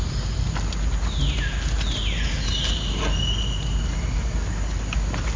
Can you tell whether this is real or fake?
real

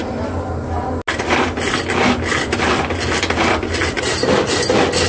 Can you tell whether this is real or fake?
real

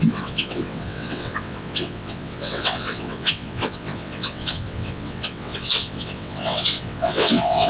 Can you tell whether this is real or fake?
fake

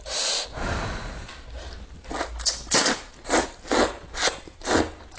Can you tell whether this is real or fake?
real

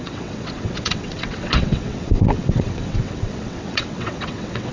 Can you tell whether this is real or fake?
fake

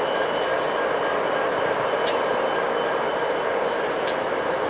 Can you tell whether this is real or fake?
real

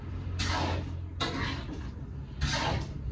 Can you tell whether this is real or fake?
real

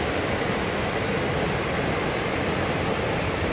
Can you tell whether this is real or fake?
real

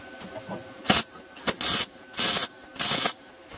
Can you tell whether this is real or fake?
real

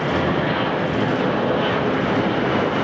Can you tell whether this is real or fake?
real